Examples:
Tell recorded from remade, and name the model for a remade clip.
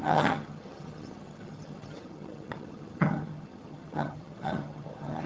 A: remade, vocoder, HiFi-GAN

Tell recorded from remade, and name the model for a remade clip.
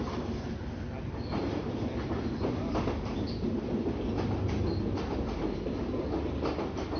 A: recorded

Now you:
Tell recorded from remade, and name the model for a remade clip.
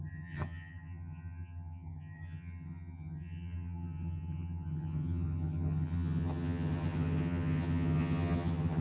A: remade, vocoder, HiFi-GAN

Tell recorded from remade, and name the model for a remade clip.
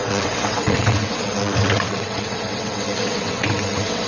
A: remade, vocoder, WaveNeXt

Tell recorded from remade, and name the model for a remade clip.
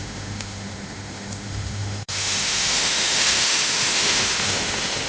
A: remade, autoencoder, DAC-VAE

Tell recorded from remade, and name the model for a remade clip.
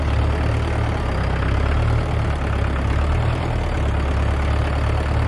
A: recorded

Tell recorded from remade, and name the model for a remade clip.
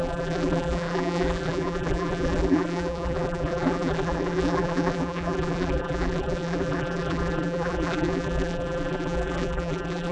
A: remade, vocoder, BigVGAN v2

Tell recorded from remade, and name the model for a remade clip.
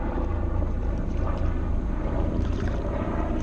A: remade, vocoder, BigVGAN v2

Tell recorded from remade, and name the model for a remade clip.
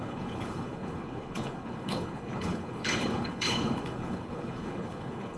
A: remade, codec, HILCodec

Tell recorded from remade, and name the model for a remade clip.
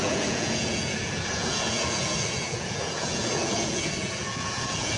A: remade, vocoder, Vocos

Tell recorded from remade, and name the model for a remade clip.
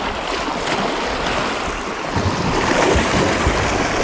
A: recorded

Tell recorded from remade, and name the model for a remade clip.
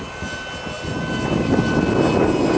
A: recorded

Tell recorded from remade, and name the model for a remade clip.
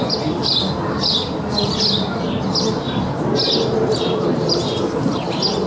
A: recorded